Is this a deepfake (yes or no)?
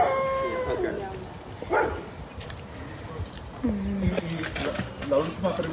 no